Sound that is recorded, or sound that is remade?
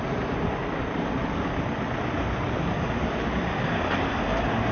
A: recorded